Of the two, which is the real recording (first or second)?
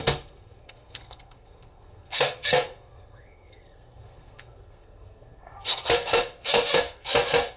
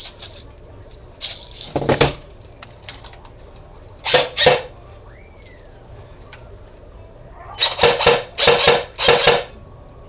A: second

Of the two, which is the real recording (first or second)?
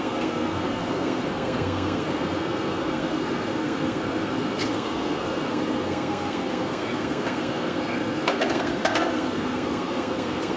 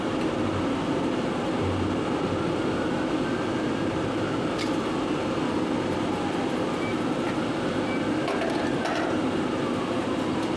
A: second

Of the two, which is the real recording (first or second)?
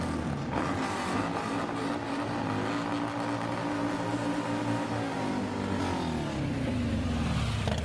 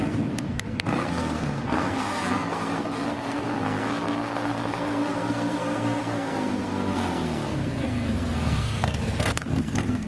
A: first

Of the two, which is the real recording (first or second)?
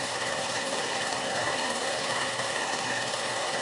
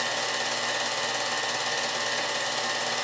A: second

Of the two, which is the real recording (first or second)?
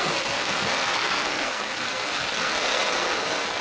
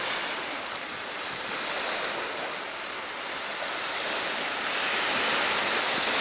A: second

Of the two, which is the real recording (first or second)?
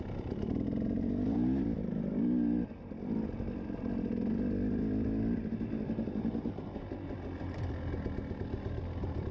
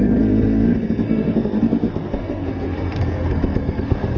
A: first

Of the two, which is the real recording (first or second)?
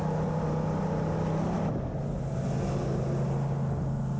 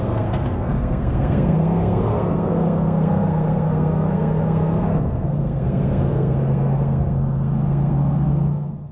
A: first